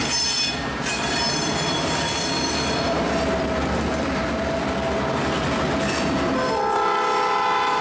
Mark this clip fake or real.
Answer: real